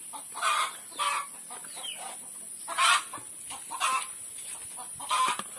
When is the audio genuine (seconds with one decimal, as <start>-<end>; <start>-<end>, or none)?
0.0-5.6